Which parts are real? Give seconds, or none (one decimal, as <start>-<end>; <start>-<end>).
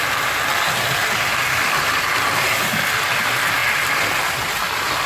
0.0-1.3; 2.8-3.6